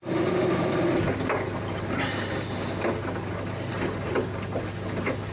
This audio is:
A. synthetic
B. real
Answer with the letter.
B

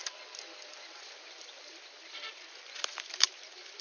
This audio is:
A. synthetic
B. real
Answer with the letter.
B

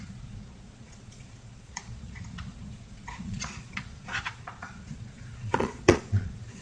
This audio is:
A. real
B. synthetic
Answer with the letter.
B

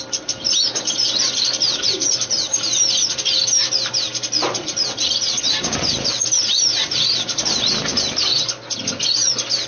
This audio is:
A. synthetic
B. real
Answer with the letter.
B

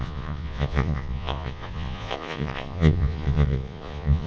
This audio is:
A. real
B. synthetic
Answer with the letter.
B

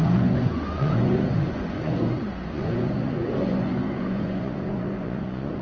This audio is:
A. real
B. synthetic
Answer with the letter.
B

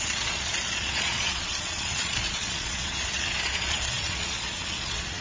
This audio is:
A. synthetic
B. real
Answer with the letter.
A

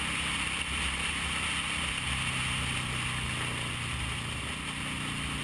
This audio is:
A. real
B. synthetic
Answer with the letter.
A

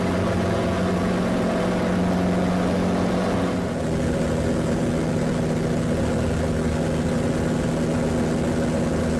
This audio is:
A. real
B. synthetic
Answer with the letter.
A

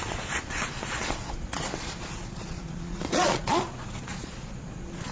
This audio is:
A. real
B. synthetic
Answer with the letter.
B